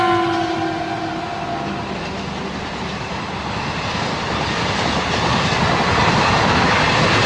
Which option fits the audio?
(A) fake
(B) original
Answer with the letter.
B